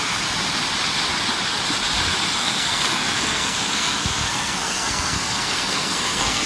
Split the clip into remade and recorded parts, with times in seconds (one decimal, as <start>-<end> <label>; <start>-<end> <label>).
0.0-2.4 recorded; 2.4-6.5 remade